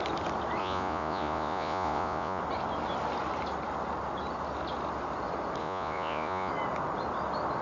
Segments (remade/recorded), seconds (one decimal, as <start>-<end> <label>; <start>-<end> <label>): 0.0-0.6 recorded; 0.6-2.4 remade; 2.4-5.6 recorded; 5.6-6.5 remade; 6.5-7.6 recorded